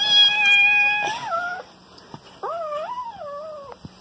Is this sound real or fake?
real